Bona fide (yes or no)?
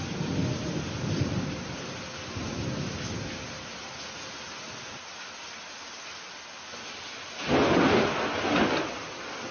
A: yes